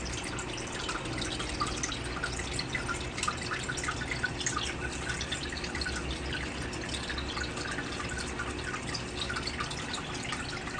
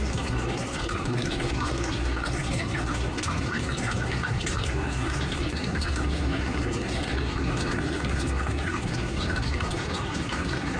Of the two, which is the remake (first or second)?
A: second